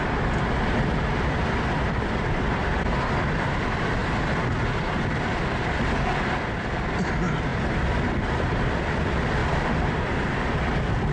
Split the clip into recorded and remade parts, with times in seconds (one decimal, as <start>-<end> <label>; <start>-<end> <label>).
0.0-4.0 remade; 4.0-5.1 recorded; 5.1-11.1 remade